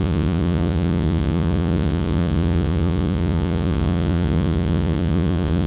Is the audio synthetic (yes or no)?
yes